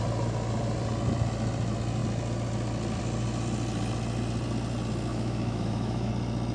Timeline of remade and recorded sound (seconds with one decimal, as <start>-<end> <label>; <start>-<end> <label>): 0.0-5.1 recorded; 5.1-6.1 remade; 6.1-6.5 recorded